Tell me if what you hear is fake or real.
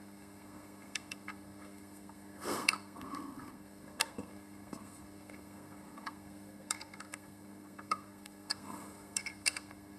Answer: fake